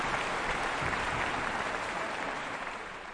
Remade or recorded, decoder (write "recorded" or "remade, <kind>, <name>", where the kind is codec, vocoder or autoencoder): remade, vocoder, BigVGAN v2